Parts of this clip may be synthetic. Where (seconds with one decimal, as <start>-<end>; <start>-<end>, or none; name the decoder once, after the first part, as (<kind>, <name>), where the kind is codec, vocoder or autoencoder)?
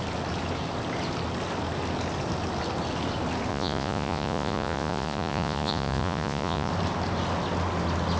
3.5-6.7 (vocoder, Vocos)